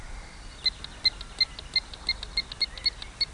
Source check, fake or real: real